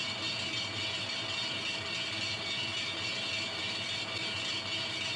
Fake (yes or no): no